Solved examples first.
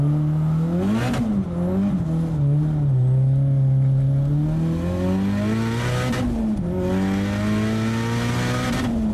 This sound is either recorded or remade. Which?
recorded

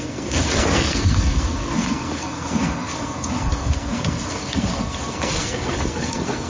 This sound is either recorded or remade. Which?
remade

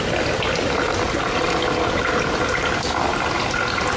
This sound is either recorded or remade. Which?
recorded